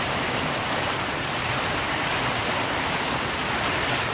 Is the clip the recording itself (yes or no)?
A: yes